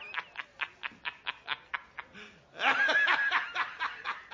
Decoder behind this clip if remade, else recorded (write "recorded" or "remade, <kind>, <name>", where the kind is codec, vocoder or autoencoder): recorded